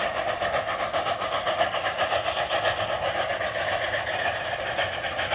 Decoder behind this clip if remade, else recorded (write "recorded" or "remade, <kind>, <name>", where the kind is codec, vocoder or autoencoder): recorded